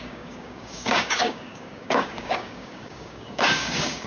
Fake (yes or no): yes